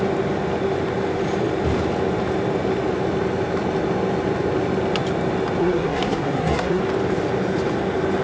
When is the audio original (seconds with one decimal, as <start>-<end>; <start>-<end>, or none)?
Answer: 0.0-5.6; 6.8-8.2